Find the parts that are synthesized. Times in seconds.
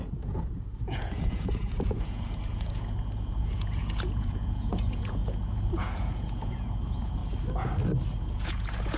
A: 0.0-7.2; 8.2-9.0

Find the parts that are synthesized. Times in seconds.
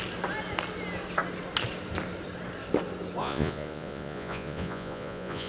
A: 3.2-5.5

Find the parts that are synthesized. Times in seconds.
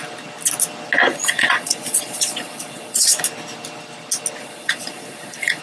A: 1.1-3.2; 4.4-5.6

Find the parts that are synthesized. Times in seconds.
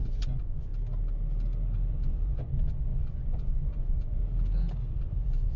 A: 0.0-0.7; 1.9-4.2; 4.8-5.6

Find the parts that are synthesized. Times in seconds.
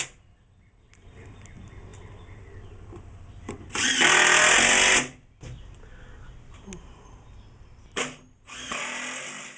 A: none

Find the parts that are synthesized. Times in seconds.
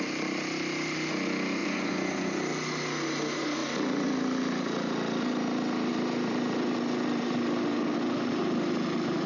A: 1.6-2.4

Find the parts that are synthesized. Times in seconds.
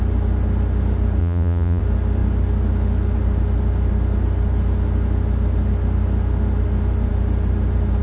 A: 1.2-1.8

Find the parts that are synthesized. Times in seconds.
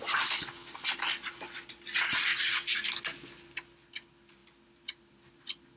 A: none